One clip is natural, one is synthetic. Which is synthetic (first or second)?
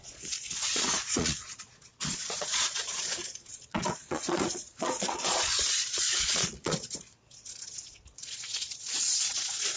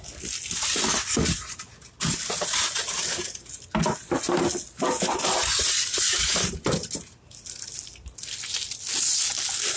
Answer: first